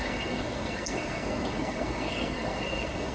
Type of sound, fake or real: fake